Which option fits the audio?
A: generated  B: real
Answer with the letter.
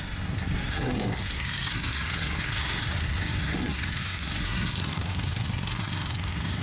A